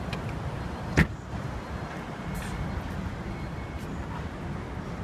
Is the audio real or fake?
real